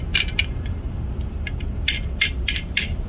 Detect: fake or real real